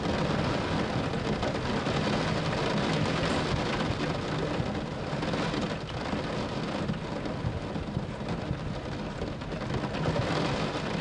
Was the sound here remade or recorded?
recorded